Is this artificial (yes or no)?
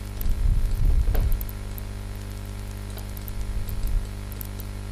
no